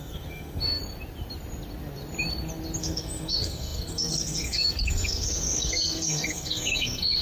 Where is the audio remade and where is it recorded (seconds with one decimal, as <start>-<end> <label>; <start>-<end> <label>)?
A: 0.0-0.8 remade; 0.8-2.8 recorded; 2.8-7.2 remade